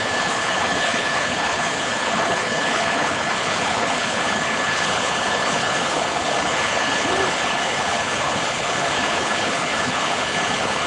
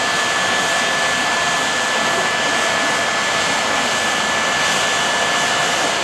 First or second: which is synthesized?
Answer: first